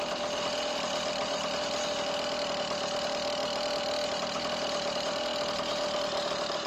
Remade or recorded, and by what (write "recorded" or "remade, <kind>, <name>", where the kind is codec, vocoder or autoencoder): recorded